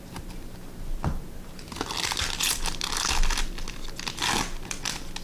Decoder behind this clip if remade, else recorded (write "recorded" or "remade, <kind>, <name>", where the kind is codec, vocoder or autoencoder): recorded